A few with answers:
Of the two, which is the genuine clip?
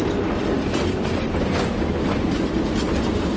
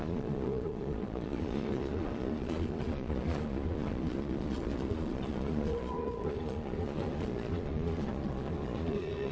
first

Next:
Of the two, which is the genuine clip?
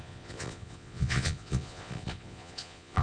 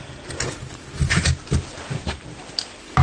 second